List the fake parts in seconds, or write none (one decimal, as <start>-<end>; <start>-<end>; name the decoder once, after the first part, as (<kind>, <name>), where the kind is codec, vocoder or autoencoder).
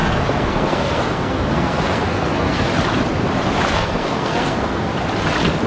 0.0-2.7 (codec, SNAC); 3.7-4.9